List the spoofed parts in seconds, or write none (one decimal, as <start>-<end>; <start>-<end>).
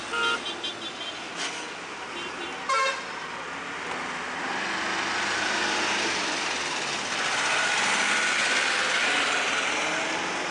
none